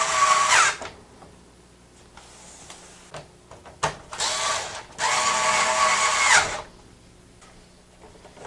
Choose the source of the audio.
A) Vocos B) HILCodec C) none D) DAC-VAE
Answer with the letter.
C